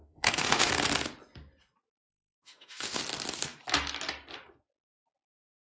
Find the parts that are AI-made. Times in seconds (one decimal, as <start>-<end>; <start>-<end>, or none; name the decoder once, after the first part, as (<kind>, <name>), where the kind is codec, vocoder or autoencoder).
0.0-0.7 (autoencoder, DAC-VAE); 2.1-3.0

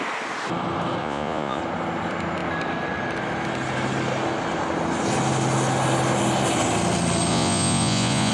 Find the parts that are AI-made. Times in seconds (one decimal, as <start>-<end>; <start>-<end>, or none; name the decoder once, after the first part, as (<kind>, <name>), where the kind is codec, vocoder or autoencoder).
1.0-1.6 (vocoder, Vocos); 7.3-8.3

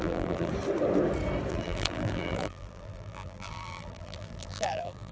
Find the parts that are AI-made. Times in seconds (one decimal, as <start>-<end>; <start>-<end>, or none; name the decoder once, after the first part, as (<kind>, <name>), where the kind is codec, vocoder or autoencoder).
0.0-0.5 (vocoder, BigVGAN v2); 1.5-5.1

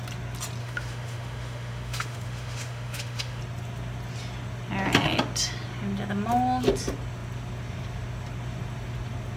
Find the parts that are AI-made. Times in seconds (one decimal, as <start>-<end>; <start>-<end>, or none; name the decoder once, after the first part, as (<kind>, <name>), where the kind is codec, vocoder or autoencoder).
0.6-3.4 (autoencoder, DAC-VAE)

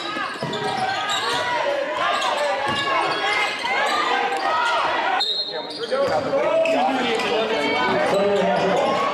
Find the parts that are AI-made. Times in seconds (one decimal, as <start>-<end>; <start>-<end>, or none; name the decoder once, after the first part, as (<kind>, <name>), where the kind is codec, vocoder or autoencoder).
none

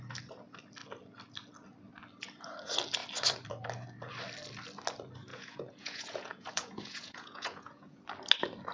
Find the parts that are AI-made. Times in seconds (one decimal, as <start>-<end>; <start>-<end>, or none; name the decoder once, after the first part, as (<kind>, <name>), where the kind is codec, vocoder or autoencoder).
5.3-8.0 (vocoder, Vocos)

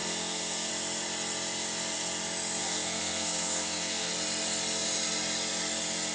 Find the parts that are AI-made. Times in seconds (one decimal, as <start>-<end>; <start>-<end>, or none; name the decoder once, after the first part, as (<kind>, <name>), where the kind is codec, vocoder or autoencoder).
0.0-0.7 (codec, SNAC); 2.6-4.1